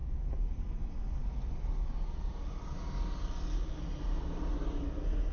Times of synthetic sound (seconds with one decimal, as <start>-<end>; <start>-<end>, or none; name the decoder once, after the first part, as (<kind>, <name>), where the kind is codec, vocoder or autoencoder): none